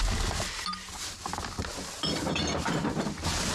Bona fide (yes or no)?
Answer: yes